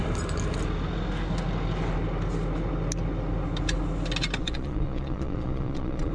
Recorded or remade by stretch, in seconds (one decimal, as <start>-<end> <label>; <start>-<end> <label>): 0.0-4.4 recorded; 4.4-6.1 remade